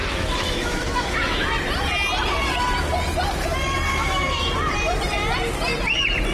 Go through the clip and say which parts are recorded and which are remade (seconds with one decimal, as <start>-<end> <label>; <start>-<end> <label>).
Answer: 0.0-1.5 remade; 1.5-3.9 recorded; 3.9-4.5 remade; 4.5-6.3 recorded